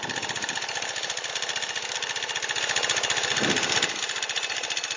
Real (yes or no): yes